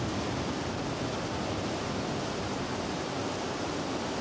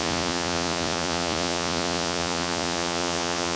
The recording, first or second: first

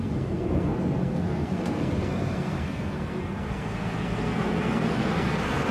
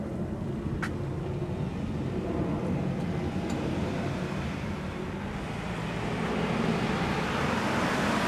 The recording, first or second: second